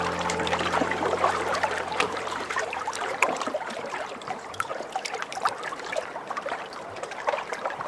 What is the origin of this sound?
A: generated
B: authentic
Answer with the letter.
A